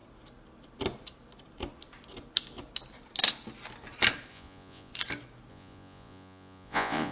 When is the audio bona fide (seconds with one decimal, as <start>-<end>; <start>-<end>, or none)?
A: 0.0-4.3; 4.9-5.5